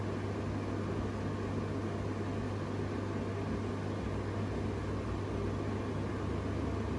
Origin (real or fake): real